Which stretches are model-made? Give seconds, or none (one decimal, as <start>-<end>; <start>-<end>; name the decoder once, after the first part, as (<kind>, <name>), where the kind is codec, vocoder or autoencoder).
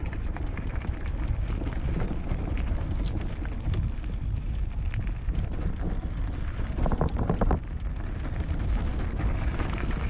8.9-10.1 (codec, DAC)